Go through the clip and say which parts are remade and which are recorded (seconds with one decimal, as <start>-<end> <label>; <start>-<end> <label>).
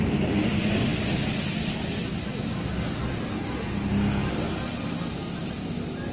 0.0-6.1 recorded